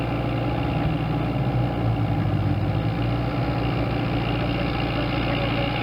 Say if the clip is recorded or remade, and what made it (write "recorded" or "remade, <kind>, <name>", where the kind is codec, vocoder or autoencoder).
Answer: recorded